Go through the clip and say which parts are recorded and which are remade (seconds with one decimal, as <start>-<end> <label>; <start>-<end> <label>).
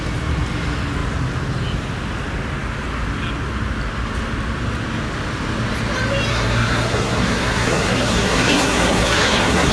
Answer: 0.0-6.3 recorded; 6.3-9.7 remade